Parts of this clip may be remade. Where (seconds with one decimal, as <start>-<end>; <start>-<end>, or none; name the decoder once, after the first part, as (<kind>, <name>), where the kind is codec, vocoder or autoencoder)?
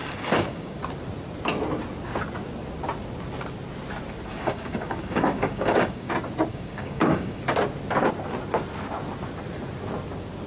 0.0-0.8 (codec, DAC); 4.3-6.1; 6.5-7.4